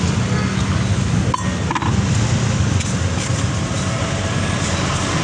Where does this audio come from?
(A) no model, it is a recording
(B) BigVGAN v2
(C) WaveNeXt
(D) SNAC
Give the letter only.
A